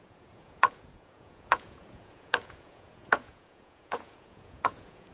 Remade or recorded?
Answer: remade